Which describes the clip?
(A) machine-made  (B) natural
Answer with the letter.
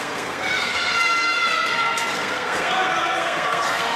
A